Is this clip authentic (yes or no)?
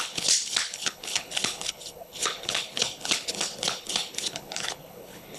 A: no